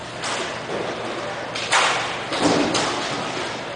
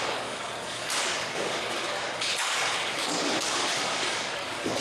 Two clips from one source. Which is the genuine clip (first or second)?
first